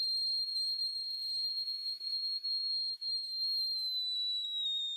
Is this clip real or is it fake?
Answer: real